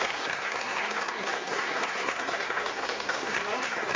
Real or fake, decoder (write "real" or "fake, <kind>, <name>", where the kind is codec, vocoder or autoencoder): fake, codec, SNAC